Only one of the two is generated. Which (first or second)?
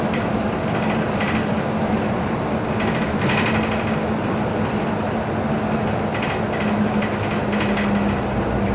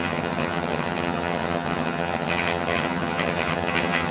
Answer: second